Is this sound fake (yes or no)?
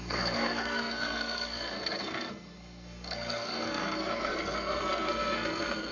yes